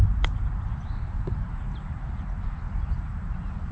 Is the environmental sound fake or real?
real